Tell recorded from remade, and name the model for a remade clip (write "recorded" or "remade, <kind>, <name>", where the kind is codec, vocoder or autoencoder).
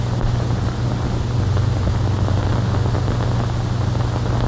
recorded